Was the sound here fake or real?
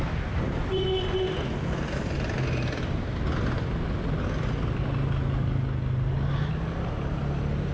real